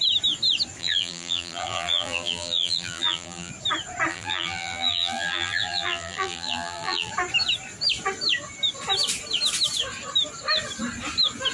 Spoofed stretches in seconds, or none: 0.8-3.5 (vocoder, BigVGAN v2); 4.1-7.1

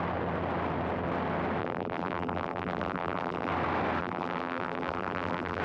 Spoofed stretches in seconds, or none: 1.6-3.5 (vocoder, BigVGAN v2); 4.0-5.6

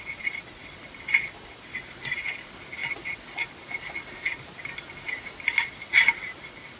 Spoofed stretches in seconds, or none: 0.0-2.8 (vocoder, BigVGAN v2); 5.7-6.8

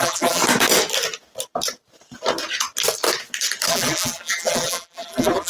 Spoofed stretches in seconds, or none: 0.0-0.4 (vocoder, BigVGAN v2); 3.7-5.5

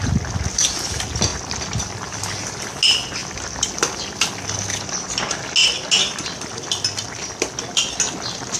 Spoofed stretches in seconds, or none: none

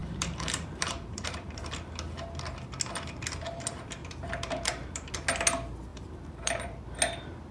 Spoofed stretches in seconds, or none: 0.0-1.7 (vocoder, BigVGAN v2); 4.0-5.1; 5.9-6.8

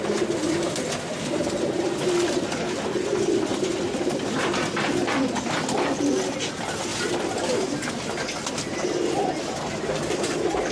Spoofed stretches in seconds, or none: 3.5-4.0 (vocoder, BigVGAN v2)

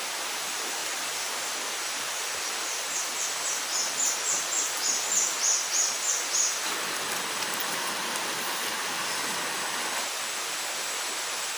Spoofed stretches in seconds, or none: none